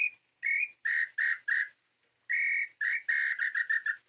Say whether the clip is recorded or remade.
recorded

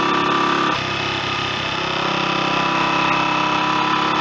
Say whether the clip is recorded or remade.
recorded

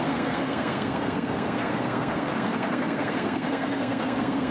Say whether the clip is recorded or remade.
remade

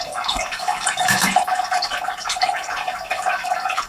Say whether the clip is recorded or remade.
remade